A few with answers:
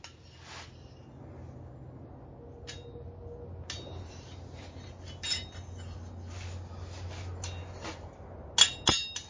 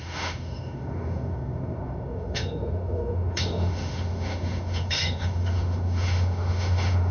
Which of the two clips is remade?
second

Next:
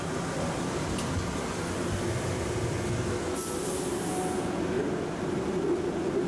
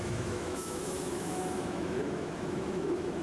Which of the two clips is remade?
second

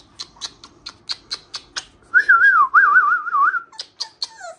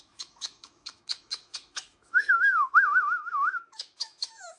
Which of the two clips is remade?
second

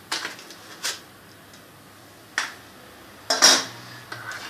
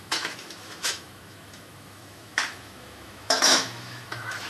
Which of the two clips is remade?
second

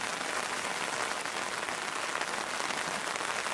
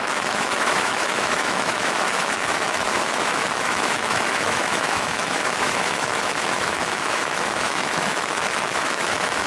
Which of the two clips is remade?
second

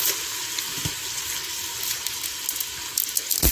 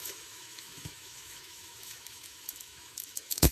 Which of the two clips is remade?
second